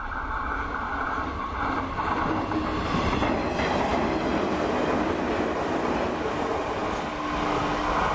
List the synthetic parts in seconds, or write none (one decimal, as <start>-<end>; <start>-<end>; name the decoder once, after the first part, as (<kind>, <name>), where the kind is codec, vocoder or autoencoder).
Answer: none